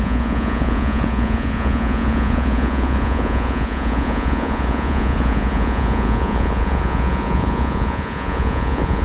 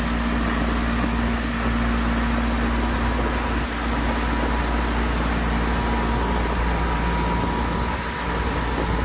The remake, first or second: first